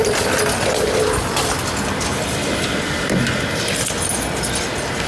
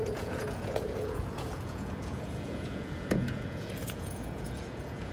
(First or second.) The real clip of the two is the first